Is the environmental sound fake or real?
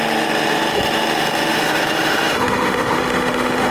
fake